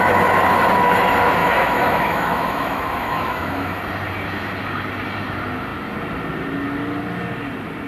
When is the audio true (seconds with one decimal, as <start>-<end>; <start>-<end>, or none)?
0.0-1.4; 3.8-7.9